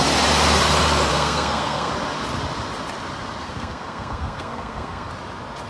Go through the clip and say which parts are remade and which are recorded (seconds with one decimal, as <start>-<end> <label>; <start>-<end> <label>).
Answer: 0.0-1.1 recorded; 1.1-1.9 remade; 1.9-3.4 recorded; 3.4-5.1 remade; 5.1-5.7 recorded